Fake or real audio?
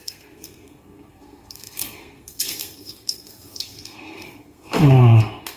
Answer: fake